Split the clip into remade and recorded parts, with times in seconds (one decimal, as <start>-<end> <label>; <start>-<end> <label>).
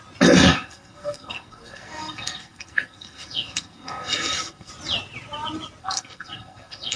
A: 0.0-0.5 recorded; 0.5-4.7 remade; 4.7-5.8 recorded; 5.8-7.0 remade